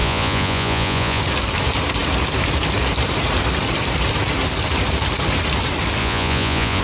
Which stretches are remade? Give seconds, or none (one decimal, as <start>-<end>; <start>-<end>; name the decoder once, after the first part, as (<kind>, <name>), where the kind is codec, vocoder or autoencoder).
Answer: 0.0-1.2 (vocoder, Vocos); 6.0-6.8